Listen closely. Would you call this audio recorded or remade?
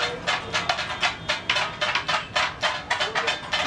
recorded